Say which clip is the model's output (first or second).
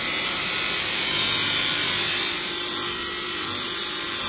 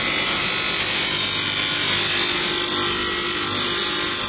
first